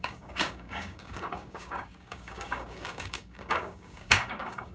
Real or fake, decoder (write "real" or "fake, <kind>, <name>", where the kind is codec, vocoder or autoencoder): fake, codec, DAC